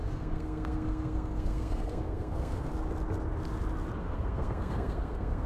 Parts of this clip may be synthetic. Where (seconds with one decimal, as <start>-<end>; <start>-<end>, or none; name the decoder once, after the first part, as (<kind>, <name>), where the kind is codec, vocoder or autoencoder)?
0.0-2.7 (codec, SNAC); 4.0-5.5